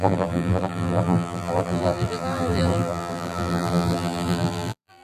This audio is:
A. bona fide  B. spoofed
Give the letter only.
B